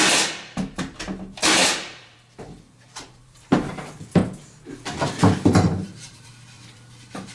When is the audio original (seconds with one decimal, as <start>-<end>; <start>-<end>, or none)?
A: 4.2-4.7